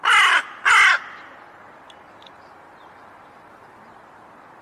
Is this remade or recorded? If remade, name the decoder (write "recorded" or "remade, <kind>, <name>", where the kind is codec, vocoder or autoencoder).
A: recorded